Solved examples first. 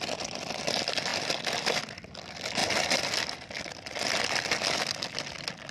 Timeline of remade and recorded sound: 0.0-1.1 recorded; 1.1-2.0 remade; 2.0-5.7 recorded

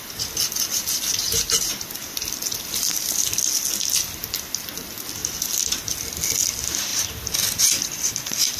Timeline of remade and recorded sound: 0.0-2.0 recorded; 2.0-3.1 remade; 3.1-6.9 recorded; 6.9-8.2 remade; 8.2-8.6 recorded

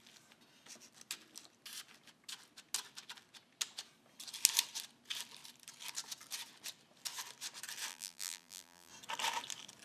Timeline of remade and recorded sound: 0.0-7.9 recorded; 7.9-8.9 remade; 8.9-9.8 recorded

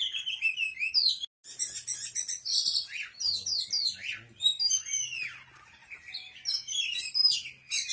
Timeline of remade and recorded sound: 0.0-7.9 recorded